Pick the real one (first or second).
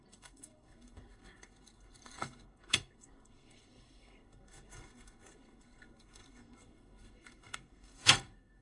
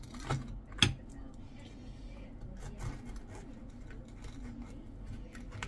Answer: second